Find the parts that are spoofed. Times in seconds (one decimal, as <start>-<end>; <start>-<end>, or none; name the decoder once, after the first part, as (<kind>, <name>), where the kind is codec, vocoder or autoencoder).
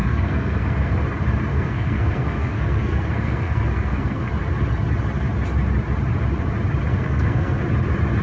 0.0-1.0 (codec, SNAC); 1.5-4.3; 6.9-7.6